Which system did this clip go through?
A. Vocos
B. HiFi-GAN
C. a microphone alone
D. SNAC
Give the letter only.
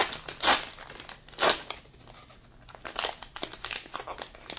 C